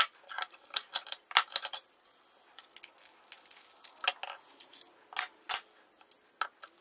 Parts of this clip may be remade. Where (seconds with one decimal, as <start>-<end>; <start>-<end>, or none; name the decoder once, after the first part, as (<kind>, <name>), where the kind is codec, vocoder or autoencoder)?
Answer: 0.9-2.1 (vocoder, BigVGAN v2)